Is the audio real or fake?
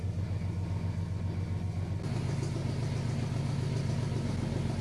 real